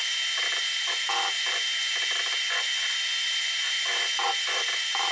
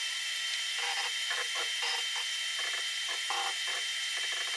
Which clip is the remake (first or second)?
second